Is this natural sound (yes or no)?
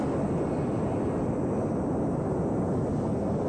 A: yes